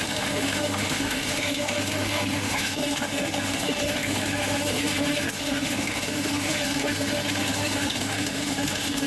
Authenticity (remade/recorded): remade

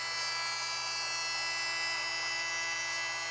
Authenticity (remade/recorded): recorded